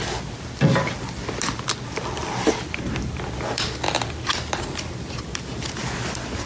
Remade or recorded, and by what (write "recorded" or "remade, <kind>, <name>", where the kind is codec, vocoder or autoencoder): recorded